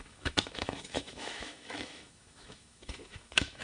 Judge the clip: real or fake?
fake